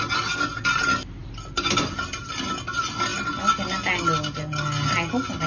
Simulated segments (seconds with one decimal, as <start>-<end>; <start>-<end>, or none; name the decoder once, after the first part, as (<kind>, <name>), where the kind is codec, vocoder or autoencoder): none